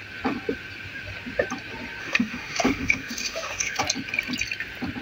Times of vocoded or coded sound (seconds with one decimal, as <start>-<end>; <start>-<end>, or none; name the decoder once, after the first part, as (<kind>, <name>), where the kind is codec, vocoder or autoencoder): 2.0-3.8 (autoencoder, DAC-VAE)